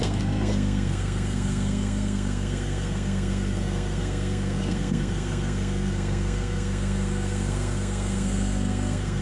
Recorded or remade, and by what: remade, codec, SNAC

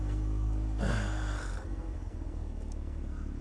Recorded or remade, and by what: remade, codec, SNAC